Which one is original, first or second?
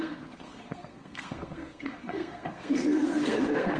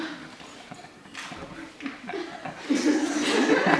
second